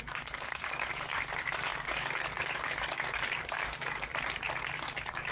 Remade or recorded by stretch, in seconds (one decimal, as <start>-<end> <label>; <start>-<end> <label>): 0.0-4.1 remade; 4.1-4.6 recorded; 4.6-5.3 remade